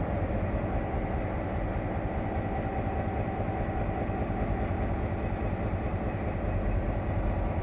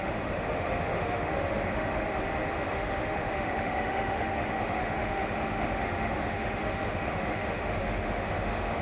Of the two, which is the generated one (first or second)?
second